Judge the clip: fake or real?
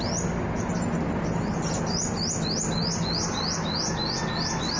real